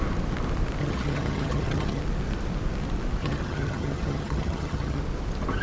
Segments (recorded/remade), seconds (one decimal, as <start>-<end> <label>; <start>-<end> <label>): 0.0-0.8 recorded; 0.8-2.0 remade; 2.0-3.2 recorded; 3.2-5.0 remade; 5.0-5.6 recorded